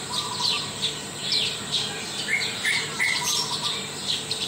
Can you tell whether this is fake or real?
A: fake